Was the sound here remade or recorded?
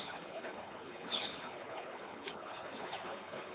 remade